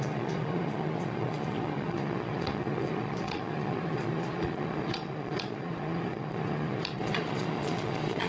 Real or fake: fake